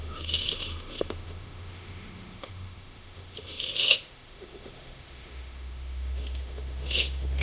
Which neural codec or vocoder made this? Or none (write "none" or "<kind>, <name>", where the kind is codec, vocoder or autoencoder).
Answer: autoencoder, DAC-VAE